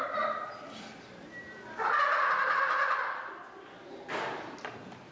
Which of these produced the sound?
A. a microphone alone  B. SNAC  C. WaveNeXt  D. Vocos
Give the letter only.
A